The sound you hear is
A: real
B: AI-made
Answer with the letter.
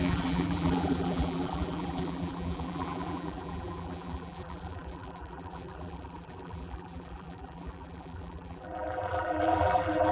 B